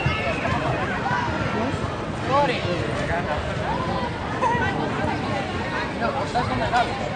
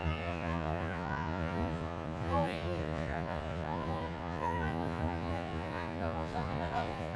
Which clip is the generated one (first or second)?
second